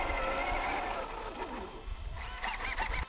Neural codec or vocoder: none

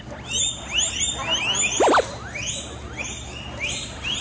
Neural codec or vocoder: none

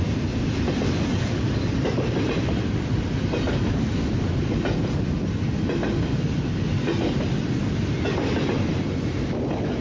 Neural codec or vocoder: vocoder, BigVGAN v2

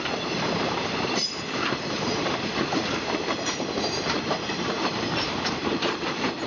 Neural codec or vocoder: vocoder, BigVGAN v2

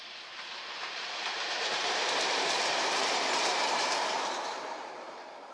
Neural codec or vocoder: vocoder, BigVGAN v2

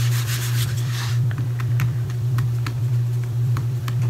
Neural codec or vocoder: vocoder, BigVGAN v2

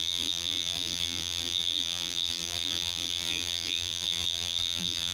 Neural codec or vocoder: vocoder, BigVGAN v2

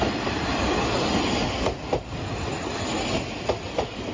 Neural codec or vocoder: vocoder, BigVGAN v2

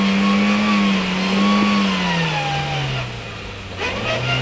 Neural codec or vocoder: none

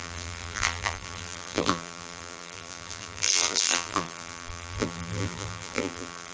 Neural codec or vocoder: vocoder, BigVGAN v2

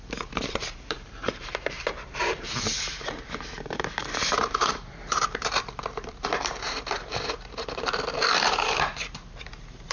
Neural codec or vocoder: vocoder, BigVGAN v2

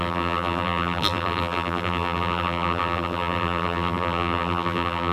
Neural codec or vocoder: vocoder, BigVGAN v2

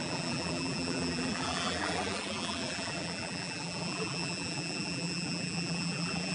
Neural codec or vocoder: vocoder, BigVGAN v2